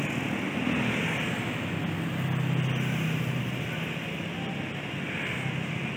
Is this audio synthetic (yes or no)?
no